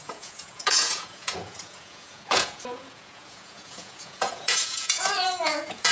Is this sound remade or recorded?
remade